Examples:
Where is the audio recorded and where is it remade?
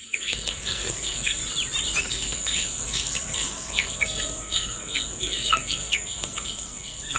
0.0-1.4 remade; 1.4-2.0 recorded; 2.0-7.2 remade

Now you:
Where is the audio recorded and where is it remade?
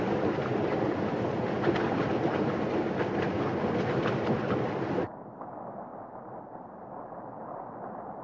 0.0-8.2 recorded